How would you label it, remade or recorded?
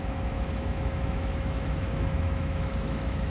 remade